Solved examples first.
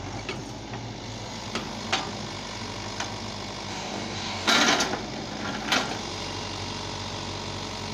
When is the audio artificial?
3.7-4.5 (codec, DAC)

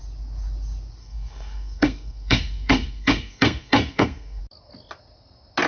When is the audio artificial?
1.0-4.4 (codec, SNAC)

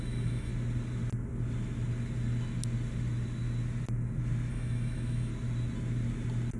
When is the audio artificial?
0.0-0.5 (autoencoder, DAC-VAE); 4.5-5.3

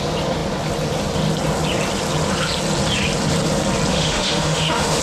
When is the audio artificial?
3.9-5.0 (autoencoder, DAC-VAE)

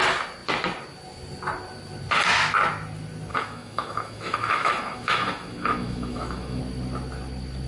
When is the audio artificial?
3.3-6.6 (autoencoder, DAC-VAE)

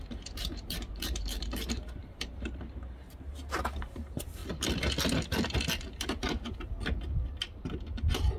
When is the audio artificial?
0.0-4.4 (vocoder, BigVGAN v2)